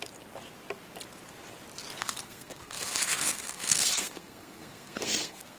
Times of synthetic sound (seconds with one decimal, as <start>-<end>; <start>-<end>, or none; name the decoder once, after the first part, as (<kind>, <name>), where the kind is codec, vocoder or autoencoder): 2.0-5.6 (codec, SNAC)